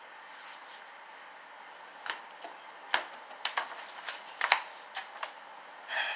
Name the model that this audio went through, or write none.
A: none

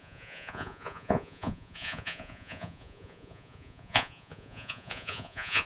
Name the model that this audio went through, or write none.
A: vocoder, Vocos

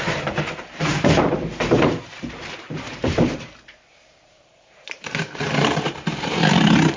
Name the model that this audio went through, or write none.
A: vocoder, BigVGAN v2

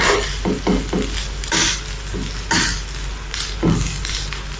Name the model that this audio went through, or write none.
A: none